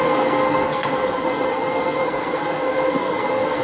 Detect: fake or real fake